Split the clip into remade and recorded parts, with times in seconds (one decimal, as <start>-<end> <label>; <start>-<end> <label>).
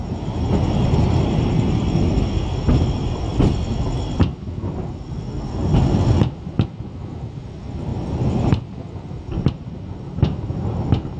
0.0-11.2 recorded